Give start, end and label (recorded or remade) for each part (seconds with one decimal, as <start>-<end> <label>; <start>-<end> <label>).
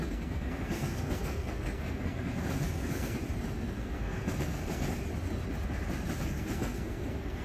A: 0.0-3.2 remade; 3.2-3.8 recorded; 3.8-4.9 remade; 4.9-6.2 recorded; 6.2-7.4 remade